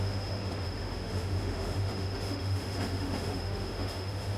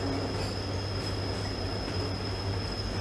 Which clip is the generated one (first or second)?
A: first